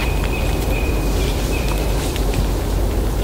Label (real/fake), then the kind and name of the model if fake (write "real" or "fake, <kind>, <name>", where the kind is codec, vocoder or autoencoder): fake, vocoder, BigVGAN v2